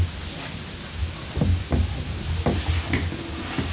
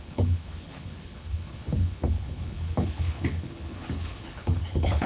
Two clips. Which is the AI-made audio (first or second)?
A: second